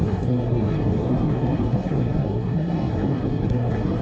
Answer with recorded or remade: remade